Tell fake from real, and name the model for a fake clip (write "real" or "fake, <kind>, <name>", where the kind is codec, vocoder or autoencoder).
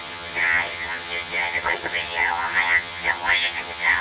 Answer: fake, vocoder, HiFi-GAN